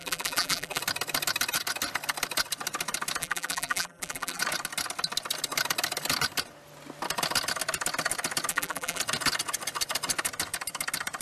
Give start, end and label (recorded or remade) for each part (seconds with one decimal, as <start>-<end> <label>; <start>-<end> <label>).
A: 0.0-0.8 remade; 0.8-3.2 recorded; 3.2-4.4 remade; 4.4-8.5 recorded; 8.5-9.0 remade; 9.0-11.2 recorded